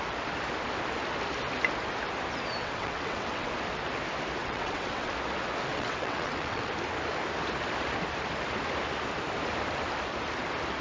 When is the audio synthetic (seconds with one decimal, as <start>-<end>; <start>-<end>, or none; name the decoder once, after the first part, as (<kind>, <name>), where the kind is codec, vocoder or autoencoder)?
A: 2.6-3.5 (vocoder, WaveNeXt); 4.4-5.1; 5.7-6.7